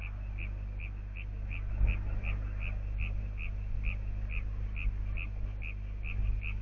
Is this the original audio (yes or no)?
yes